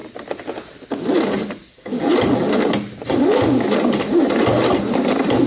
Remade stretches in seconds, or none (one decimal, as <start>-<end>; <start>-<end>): 1.7-2.1